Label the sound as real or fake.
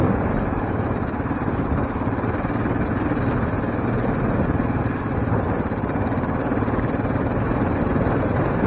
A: real